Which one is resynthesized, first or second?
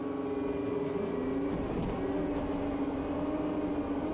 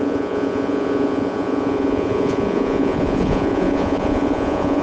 second